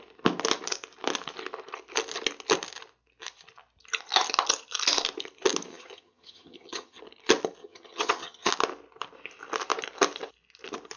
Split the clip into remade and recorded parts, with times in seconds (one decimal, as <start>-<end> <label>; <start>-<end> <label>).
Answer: 0.0-5.7 recorded; 5.7-7.0 remade; 7.0-7.6 recorded; 7.6-8.5 remade; 8.5-11.0 recorded